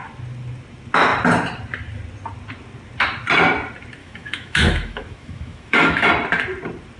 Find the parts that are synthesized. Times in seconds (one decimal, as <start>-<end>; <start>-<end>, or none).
4.0-6.1